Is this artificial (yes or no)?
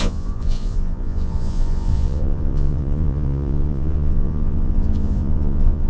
yes